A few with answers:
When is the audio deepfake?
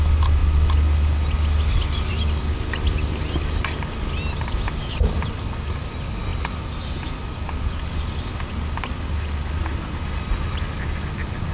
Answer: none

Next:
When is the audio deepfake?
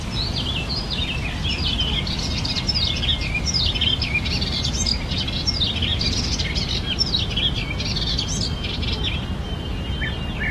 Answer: none